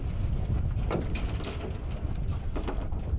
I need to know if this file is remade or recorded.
recorded